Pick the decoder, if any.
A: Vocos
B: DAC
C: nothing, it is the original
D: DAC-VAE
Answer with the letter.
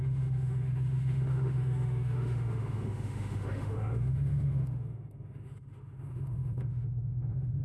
D